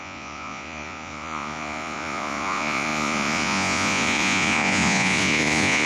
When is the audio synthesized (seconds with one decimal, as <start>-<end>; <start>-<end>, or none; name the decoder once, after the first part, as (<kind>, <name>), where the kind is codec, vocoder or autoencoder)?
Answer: 0.0-5.9 (vocoder, Vocos)